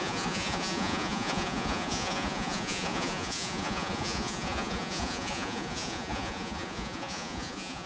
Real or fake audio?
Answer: fake